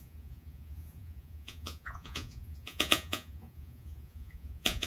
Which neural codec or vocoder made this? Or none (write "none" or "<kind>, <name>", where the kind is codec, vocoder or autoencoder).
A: vocoder, Vocos